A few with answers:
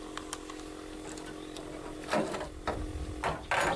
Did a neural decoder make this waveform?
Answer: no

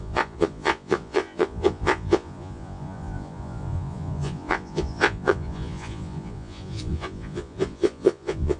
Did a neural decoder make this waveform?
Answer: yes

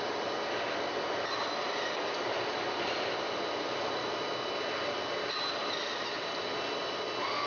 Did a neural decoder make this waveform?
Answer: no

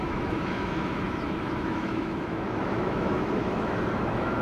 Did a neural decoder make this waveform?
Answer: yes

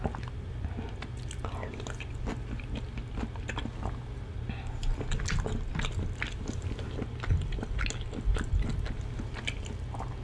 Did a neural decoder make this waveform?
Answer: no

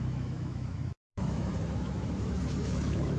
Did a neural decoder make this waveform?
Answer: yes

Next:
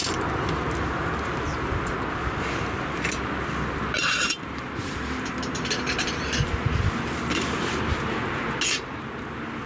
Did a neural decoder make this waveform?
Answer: no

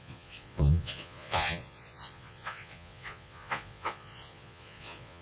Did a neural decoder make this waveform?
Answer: yes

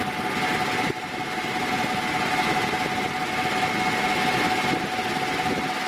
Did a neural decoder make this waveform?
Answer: no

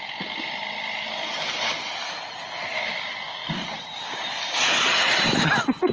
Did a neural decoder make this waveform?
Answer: no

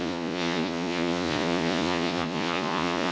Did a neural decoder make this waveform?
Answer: yes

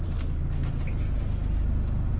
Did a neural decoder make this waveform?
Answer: yes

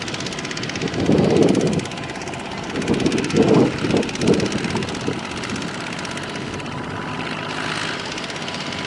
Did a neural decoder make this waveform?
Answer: no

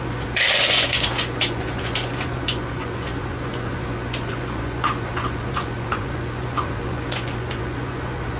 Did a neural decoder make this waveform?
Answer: yes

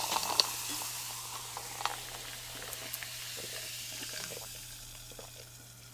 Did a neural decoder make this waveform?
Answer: no